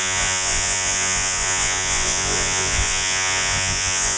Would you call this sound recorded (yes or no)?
no